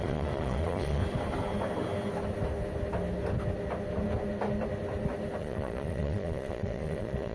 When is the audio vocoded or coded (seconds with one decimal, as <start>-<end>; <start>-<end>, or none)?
0.0-1.0; 5.4-7.3